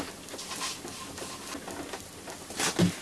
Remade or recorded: recorded